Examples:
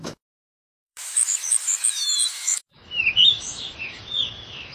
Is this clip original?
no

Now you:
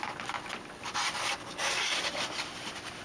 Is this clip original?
yes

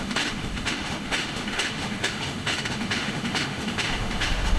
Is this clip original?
no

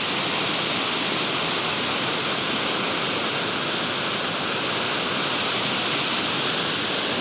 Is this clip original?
yes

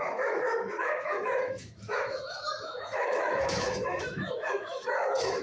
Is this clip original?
no